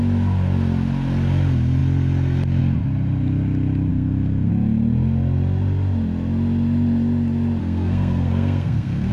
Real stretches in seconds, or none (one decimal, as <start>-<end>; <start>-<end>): 0.0-3.9; 4.5-7.6